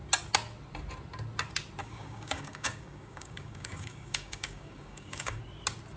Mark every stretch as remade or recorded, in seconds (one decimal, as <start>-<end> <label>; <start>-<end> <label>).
0.0-1.8 recorded; 1.8-5.4 remade; 5.4-6.0 recorded